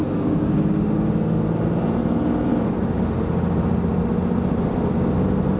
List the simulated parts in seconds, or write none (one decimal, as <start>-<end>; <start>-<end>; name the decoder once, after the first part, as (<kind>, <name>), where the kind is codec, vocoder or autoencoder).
0.0-0.8 (codec, DAC); 2.5-3.0